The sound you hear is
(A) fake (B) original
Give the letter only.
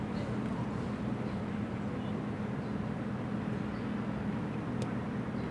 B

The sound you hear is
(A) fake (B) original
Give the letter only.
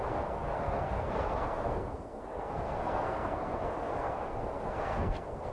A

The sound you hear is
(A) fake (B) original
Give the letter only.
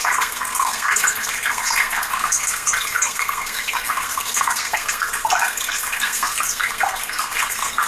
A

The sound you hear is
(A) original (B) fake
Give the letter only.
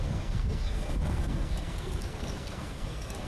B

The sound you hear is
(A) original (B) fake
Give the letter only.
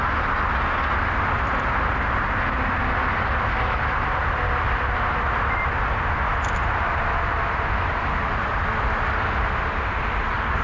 A